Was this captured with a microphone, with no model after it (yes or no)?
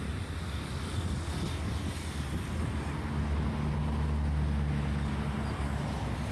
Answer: yes